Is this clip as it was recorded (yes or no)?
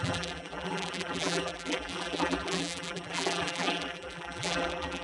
no